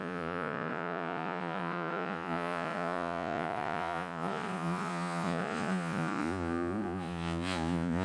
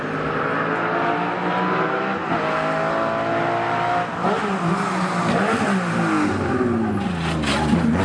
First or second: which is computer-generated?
first